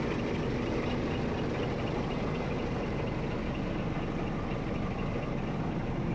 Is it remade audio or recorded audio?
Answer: recorded